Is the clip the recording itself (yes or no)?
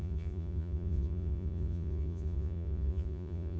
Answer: no